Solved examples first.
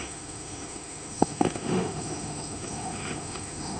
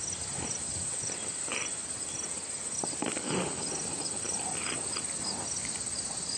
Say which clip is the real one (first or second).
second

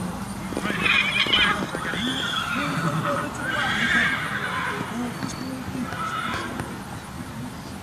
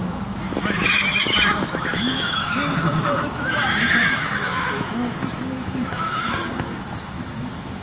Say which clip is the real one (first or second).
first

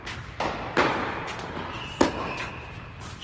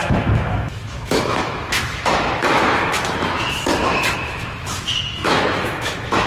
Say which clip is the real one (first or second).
first